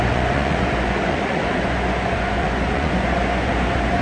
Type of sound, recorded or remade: remade